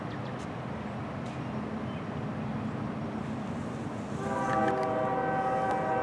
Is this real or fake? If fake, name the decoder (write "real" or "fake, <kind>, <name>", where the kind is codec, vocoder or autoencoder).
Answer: real